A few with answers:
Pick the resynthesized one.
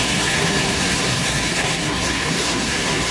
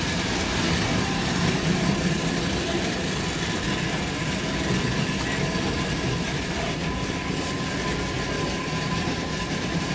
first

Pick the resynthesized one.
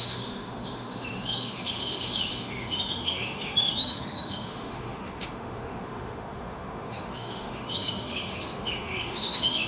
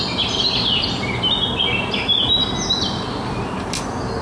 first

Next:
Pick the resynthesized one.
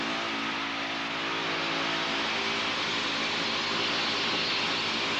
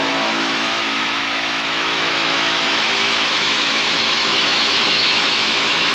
second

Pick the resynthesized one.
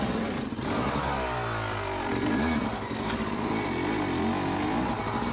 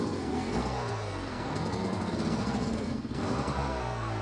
second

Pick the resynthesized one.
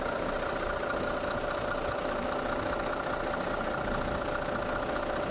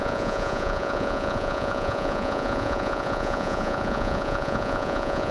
second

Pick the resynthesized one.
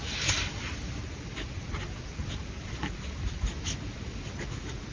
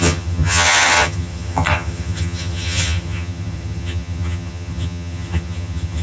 second